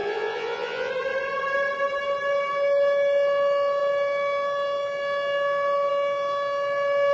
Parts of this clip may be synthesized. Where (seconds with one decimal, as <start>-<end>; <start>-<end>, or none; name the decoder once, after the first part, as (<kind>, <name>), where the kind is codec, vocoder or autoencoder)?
0.0-0.9 (vocoder, Vocos)